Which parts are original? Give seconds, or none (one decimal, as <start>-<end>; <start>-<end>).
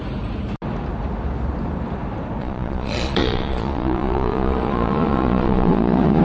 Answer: 0.0-2.4